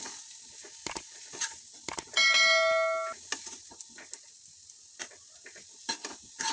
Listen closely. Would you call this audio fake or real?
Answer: real